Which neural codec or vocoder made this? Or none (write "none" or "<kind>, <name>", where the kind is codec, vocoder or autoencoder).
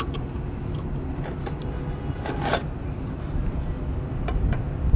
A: none